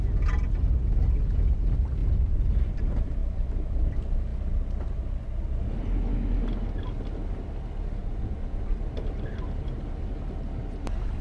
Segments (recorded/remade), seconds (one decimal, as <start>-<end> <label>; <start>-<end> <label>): 0.0-8.0 recorded; 8.0-8.6 remade; 8.6-11.2 recorded